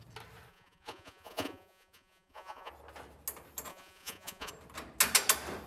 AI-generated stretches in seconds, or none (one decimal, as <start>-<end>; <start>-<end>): 0.5-2.7; 3.7-4.5